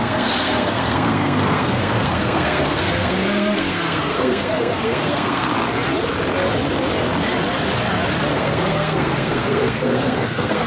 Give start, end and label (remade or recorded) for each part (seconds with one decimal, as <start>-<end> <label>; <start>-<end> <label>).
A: 0.0-5.5 remade; 5.5-8.3 recorded; 8.3-10.7 remade